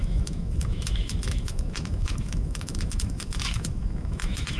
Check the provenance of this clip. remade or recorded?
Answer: remade